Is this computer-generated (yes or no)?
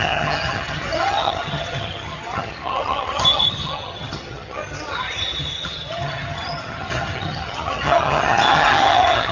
yes